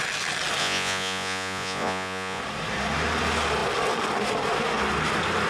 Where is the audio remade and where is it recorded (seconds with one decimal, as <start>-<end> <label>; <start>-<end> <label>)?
0.0-0.6 recorded; 0.6-2.4 remade; 2.4-5.5 recorded